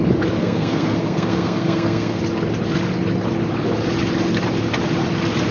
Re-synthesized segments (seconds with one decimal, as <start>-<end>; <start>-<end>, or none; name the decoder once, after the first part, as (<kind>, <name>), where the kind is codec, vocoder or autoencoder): 0.4-2.2 (codec, SNAC)